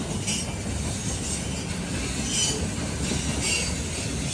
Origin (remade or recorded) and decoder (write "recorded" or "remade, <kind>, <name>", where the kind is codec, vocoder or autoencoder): recorded